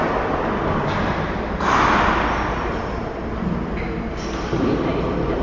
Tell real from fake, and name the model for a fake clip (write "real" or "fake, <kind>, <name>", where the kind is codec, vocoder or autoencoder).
real